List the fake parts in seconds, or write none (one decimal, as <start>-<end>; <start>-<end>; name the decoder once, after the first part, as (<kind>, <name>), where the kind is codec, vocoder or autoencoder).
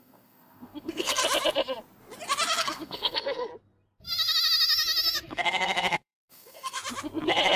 0.0-1.2 (codec, SNAC); 2.6-3.5; 5.2-6.8